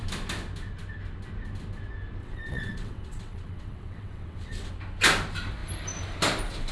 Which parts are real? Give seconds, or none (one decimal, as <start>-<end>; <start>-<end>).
0.0-2.2; 4.7-6.7